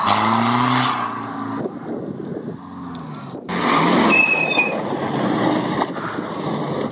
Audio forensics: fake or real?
real